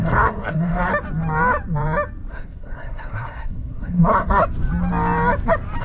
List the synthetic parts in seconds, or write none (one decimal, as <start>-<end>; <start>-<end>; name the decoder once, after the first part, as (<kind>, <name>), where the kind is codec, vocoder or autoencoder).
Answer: 0.0-0.9 (codec, SNAC); 2.3-4.4